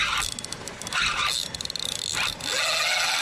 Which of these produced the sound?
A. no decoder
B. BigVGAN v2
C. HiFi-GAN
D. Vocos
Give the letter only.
A